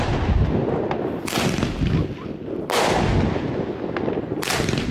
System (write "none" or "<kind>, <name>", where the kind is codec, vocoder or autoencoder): none